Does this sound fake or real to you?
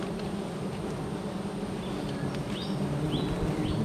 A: real